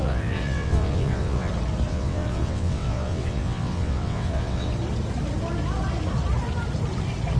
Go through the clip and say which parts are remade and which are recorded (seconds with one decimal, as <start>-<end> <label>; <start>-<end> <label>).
0.0-1.5 remade; 1.5-1.9 recorded; 1.9-4.7 remade; 4.7-7.4 recorded